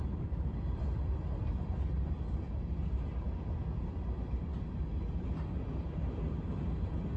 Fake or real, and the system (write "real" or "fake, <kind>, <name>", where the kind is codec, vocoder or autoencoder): real